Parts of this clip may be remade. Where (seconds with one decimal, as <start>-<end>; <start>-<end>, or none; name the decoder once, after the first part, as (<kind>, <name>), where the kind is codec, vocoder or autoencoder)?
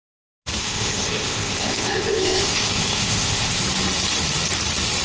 0.6-3.6 (codec, ZipCodec)